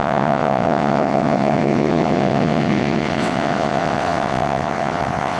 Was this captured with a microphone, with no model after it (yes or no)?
no